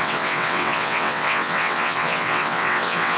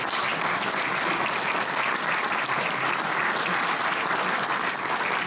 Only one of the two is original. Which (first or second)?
second